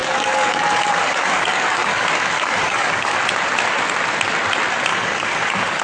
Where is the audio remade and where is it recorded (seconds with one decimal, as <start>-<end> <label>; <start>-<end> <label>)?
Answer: 0.0-3.2 remade; 3.2-4.9 recorded; 4.9-5.8 remade